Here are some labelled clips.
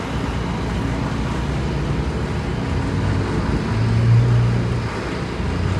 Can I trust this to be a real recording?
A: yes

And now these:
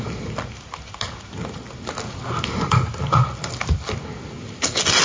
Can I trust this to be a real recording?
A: yes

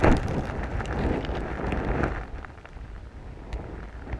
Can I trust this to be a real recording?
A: yes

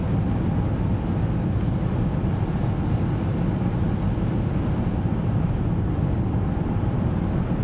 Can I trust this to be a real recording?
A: yes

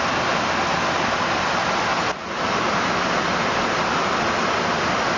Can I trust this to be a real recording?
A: yes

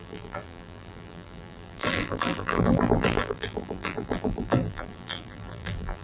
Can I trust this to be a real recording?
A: no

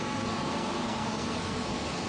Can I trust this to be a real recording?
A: no